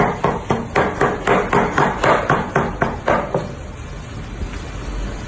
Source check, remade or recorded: recorded